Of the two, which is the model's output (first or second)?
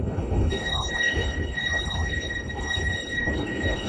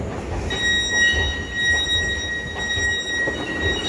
first